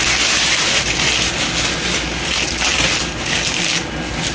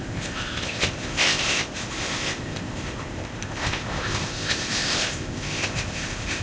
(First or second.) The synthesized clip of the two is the second